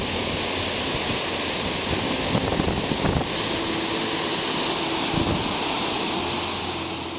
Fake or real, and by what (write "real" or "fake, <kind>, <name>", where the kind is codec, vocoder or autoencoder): real